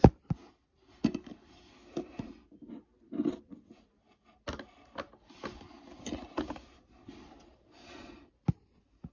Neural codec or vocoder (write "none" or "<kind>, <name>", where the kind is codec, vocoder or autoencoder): none